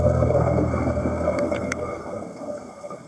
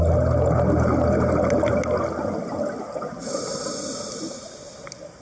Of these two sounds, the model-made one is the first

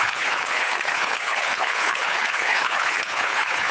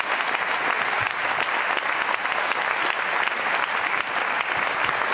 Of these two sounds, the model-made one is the first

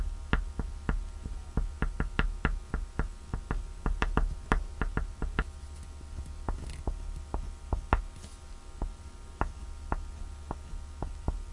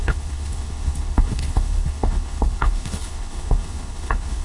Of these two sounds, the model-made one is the second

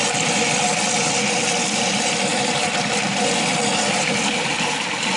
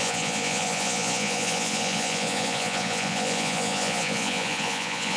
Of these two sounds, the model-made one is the second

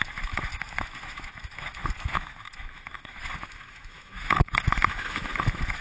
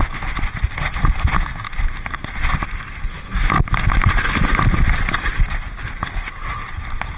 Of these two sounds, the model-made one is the first